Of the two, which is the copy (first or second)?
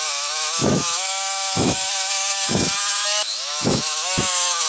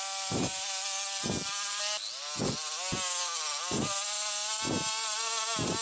first